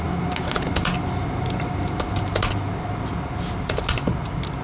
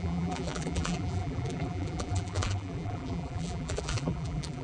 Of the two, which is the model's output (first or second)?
second